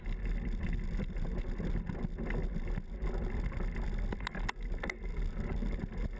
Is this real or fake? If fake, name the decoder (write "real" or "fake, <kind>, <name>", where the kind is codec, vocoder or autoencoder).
real